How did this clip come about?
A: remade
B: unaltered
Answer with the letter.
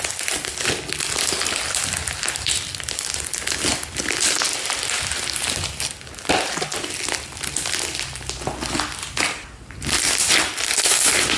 B